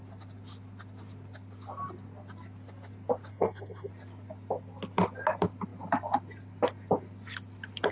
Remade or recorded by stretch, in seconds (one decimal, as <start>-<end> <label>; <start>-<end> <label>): 0.0-3.3 recorded; 3.3-3.9 remade; 3.9-7.9 recorded